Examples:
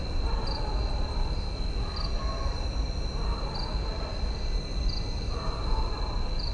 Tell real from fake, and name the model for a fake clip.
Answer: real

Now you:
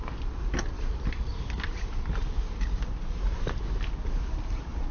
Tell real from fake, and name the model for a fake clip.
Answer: real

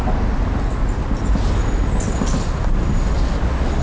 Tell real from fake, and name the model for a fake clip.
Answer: real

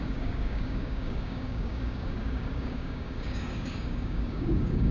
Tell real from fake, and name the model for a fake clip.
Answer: fake, codec, DAC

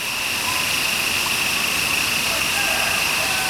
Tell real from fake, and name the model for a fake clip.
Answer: real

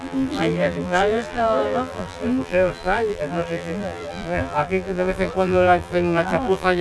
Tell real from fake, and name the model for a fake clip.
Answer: fake, vocoder, BigVGAN v2